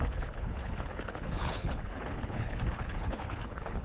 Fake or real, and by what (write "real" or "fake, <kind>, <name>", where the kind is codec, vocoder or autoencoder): fake, codec, HILCodec